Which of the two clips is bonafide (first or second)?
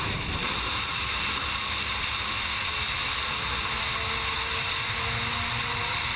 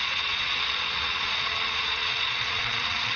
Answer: first